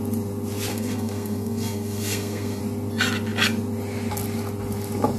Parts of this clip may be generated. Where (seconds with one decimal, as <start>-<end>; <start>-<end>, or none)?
0.7-2.6